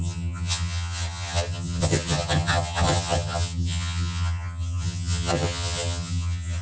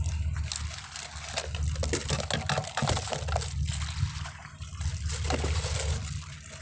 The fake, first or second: first